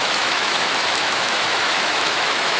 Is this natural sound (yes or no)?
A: no